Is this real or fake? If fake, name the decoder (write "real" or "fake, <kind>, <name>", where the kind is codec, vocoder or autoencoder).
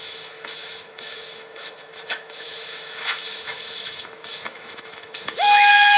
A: fake, autoencoder, DAC-VAE